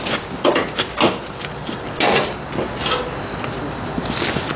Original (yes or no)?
yes